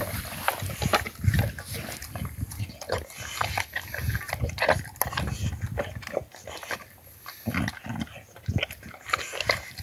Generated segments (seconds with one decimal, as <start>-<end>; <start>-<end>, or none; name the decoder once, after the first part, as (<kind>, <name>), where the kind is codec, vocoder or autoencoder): none